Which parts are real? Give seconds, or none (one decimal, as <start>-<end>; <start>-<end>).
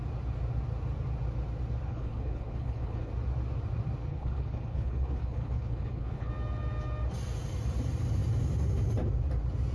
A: 0.0-1.9; 3.1-4.1; 6.3-9.7